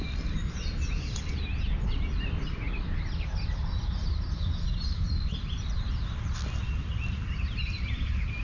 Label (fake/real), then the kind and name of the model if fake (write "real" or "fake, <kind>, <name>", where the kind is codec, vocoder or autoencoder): real